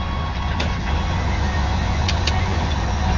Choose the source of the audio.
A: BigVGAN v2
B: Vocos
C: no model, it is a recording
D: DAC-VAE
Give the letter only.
B